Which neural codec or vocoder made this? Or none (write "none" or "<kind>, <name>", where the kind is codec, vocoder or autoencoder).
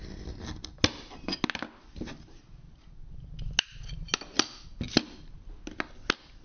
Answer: none